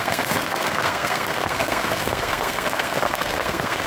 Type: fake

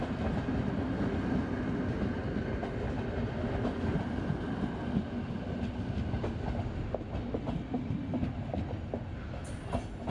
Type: real